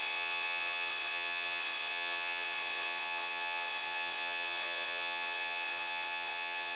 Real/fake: fake